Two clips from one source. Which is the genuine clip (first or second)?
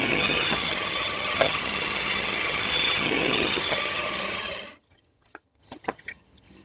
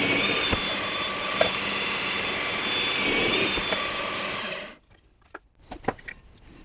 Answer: second